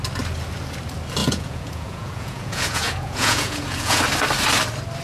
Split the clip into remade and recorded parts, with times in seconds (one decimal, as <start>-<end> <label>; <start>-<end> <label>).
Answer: 0.0-1.2 recorded; 1.2-4.0 remade; 4.0-5.0 recorded